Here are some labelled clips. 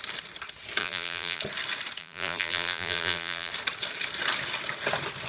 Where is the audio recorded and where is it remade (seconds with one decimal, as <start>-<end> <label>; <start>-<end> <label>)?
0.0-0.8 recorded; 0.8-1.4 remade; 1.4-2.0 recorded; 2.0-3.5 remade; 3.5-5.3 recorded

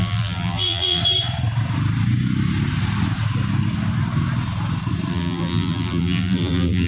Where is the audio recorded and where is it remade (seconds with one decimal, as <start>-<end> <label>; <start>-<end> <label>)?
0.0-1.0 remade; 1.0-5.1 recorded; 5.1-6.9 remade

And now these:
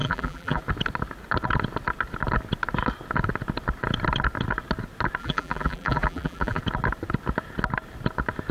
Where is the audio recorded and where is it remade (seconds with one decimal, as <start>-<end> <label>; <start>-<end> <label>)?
0.0-0.6 remade; 0.6-5.2 recorded; 5.2-6.6 remade; 6.6-8.5 recorded

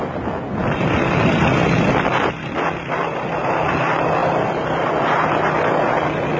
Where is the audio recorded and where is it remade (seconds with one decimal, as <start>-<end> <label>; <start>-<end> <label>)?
0.0-0.6 recorded; 0.6-3.7 remade; 3.7-4.2 recorded; 4.2-4.9 remade; 4.9-6.4 recorded